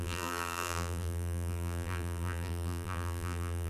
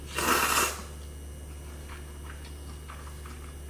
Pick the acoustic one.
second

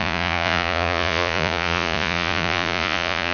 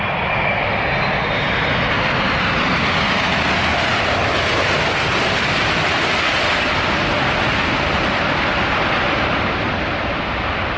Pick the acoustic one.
second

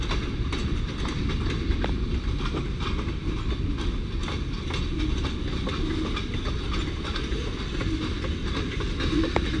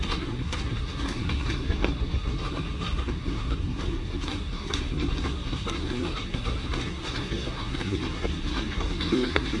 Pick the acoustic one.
first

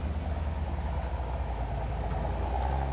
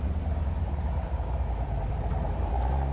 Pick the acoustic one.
first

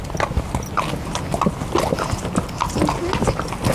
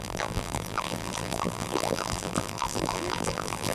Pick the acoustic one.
first